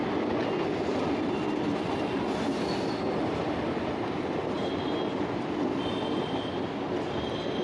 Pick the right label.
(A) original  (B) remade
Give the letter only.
A